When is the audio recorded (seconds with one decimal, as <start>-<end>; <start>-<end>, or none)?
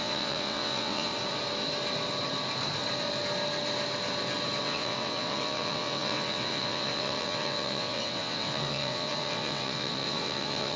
1.1-4.6